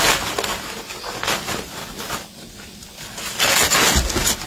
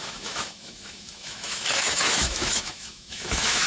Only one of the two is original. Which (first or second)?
first